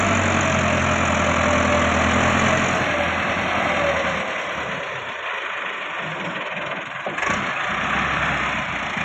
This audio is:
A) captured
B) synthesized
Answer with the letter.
A